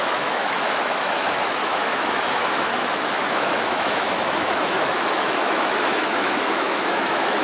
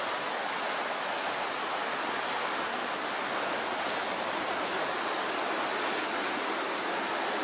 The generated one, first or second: first